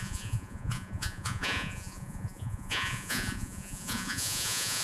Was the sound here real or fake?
fake